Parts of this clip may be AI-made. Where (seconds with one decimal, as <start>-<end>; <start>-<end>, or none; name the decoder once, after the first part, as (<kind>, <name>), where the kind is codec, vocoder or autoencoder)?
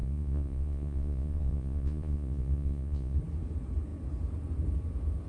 0.0-3.2 (vocoder, Vocos)